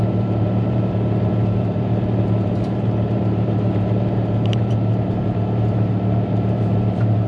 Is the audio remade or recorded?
remade